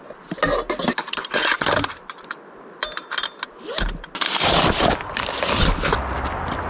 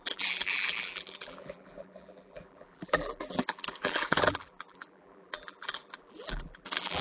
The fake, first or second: second